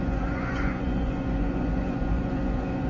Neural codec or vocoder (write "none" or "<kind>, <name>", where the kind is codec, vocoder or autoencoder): vocoder, Vocos